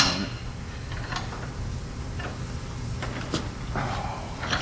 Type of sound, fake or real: real